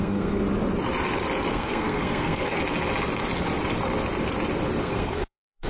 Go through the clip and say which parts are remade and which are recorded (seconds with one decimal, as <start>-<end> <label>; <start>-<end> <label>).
0.0-0.4 remade; 0.4-1.5 recorded; 1.5-2.6 remade; 2.6-4.8 recorded; 4.8-5.7 remade